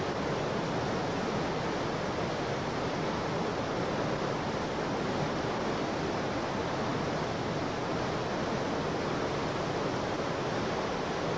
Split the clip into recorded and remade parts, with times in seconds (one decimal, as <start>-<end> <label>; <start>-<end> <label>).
0.0-11.4 recorded